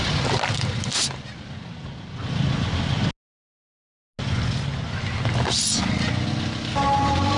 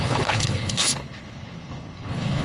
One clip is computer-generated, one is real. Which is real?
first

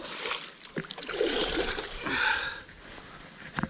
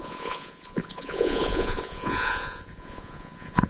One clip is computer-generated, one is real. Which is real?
first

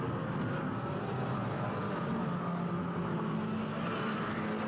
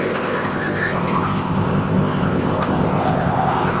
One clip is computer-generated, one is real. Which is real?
first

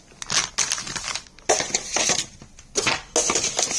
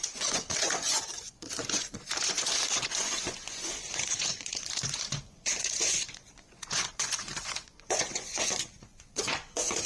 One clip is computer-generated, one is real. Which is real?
first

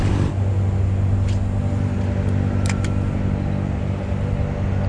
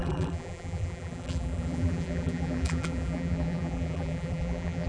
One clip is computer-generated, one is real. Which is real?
first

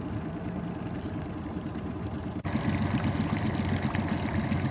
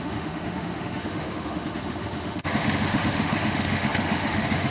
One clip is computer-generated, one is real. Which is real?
first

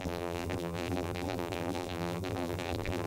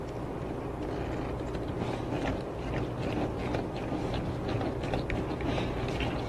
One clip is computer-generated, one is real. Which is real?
second